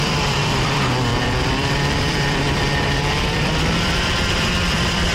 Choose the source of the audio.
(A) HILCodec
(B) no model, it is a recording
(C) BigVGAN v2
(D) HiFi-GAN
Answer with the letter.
C